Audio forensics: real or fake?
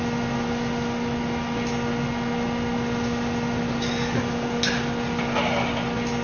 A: real